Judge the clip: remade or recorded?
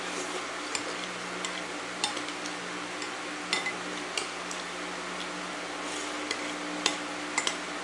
recorded